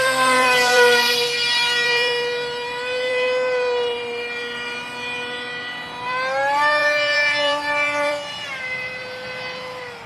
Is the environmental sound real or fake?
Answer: fake